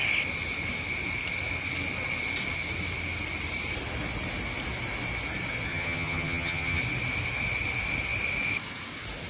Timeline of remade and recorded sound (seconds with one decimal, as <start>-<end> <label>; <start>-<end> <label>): 0.0-5.7 recorded; 5.7-6.8 remade; 6.8-9.3 recorded